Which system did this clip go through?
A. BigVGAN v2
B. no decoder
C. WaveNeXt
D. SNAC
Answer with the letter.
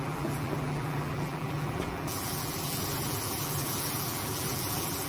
A